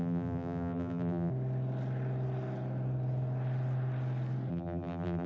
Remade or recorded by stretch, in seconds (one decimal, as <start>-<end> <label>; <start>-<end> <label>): 0.0-1.3 remade; 1.3-4.5 recorded; 4.5-5.3 remade